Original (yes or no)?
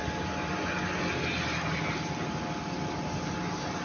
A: yes